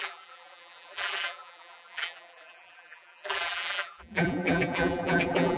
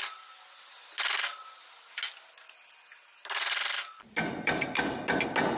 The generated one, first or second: first